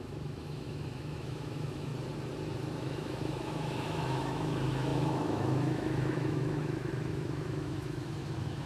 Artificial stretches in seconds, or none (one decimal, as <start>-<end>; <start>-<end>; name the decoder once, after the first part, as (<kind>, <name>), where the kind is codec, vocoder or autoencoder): 0.0-1.9 (autoencoder, DAC-VAE); 2.8-8.7